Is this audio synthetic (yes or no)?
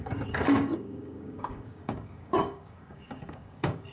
yes